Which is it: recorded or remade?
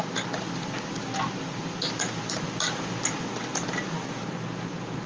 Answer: recorded